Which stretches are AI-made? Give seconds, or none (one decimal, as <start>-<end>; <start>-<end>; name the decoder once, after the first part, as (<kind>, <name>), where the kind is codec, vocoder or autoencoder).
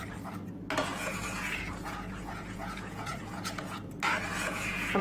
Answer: 0.8-3.8 (vocoder, Vocos); 4.3-5.0